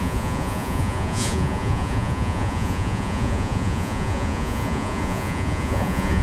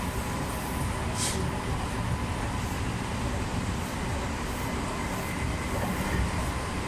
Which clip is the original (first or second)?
second